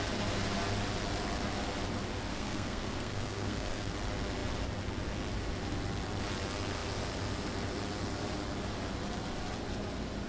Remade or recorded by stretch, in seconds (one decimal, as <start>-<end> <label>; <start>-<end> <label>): 0.0-2.3 recorded; 2.3-3.9 remade; 3.9-10.3 recorded